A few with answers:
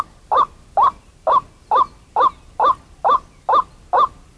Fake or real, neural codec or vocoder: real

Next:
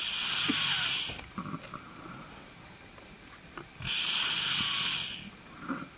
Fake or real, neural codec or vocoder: real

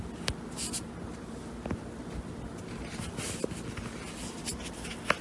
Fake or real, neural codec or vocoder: real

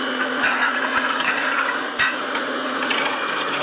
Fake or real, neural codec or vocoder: fake, vocoder, Vocos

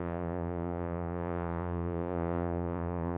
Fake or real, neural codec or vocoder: fake, vocoder, Vocos